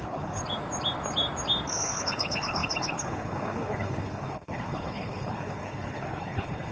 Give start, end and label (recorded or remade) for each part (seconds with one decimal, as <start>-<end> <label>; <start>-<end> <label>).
0.0-0.4 remade; 0.4-1.7 recorded; 1.7-6.7 remade